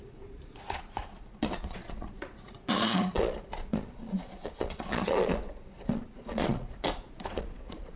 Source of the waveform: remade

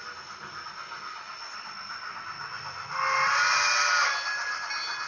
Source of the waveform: recorded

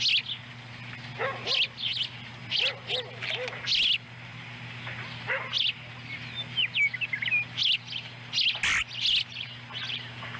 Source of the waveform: recorded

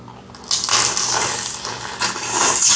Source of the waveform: recorded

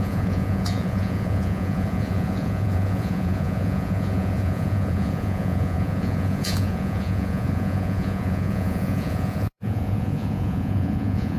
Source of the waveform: remade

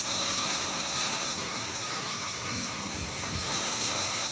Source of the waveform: remade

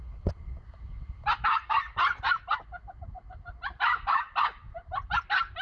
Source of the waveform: recorded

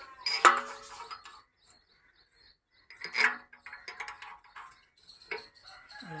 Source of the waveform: recorded